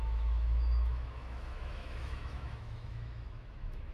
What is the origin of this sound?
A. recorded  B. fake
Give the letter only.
B